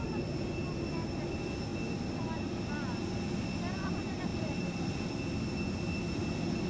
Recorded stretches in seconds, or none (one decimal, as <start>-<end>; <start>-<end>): 0.0-4.3; 5.0-6.7